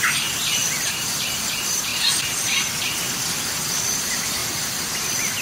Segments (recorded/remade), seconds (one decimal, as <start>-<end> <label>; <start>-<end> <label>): 0.0-1.9 remade; 1.9-2.9 recorded; 2.9-5.4 remade